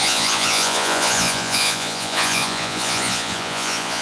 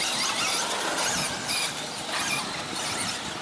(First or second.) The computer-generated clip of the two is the first